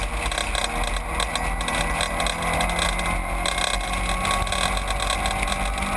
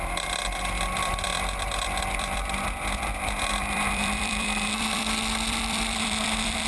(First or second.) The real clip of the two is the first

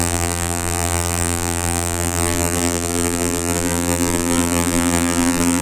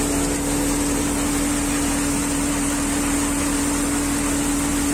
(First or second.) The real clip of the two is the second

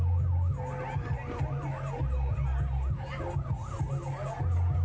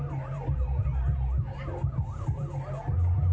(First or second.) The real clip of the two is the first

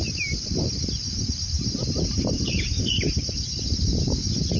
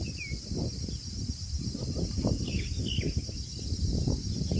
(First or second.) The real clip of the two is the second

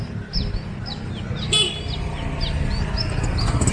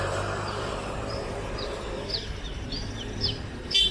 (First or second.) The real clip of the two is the first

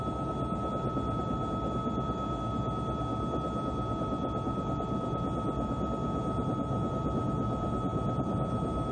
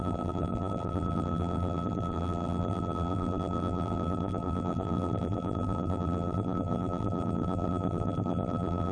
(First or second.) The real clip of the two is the first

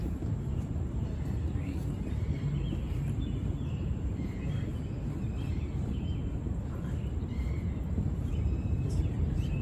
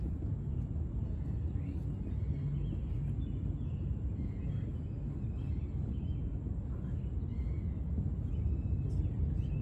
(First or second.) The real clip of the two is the second